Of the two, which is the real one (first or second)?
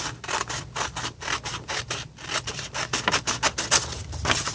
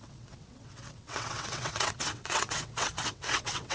first